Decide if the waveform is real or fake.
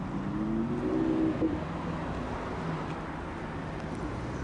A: real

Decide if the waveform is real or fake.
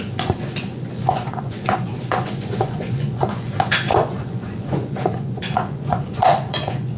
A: fake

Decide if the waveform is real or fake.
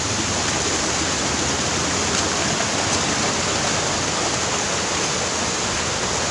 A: real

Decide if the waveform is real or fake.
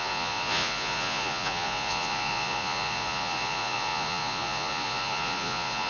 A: fake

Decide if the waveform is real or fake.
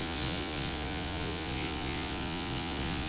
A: fake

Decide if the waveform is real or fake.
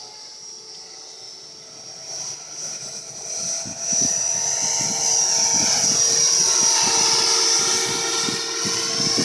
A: real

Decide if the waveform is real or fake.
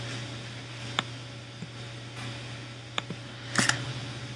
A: real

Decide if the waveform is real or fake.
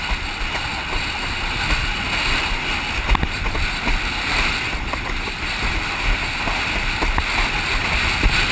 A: real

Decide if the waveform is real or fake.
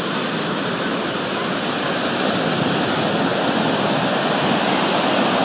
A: real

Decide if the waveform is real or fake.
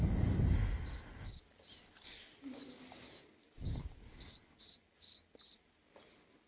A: real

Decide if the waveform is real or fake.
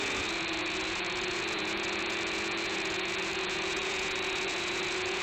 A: fake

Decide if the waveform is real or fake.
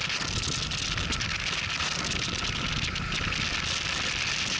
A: real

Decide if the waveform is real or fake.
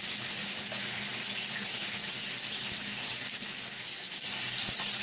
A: real